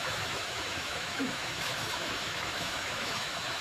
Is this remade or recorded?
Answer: remade